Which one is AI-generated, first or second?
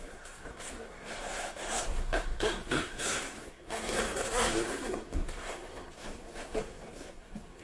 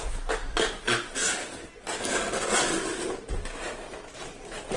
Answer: first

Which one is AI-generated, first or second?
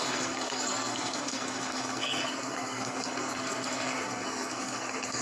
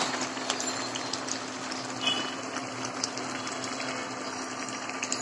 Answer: first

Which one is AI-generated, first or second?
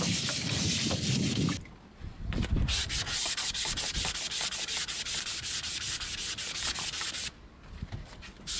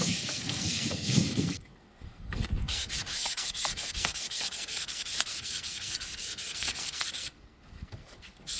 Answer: second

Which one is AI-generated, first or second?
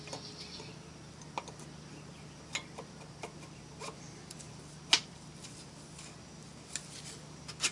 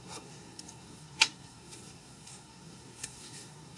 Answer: second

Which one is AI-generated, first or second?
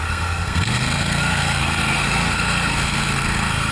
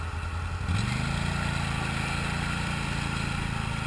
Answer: first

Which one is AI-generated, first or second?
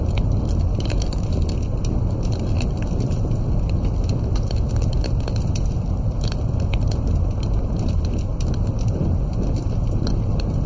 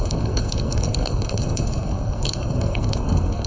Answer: second